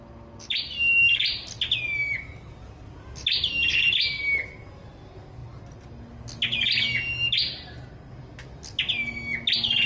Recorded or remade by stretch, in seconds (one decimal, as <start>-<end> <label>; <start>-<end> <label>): 0.0-9.9 recorded